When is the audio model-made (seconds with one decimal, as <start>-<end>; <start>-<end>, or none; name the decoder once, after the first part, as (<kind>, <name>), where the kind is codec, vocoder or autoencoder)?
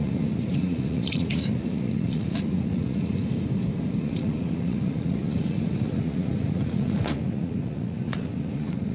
0.0-3.2 (vocoder, Vocos); 4.0-8.9